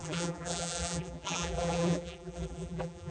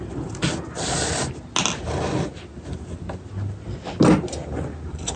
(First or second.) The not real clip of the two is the first